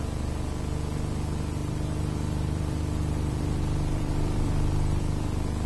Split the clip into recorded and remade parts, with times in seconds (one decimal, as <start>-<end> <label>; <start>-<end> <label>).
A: 0.0-1.6 recorded; 1.6-5.0 remade; 5.0-5.7 recorded